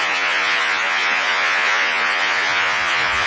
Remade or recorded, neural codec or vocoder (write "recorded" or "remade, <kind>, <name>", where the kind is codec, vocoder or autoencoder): remade, vocoder, Vocos